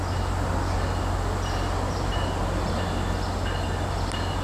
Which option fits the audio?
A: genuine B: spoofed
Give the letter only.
A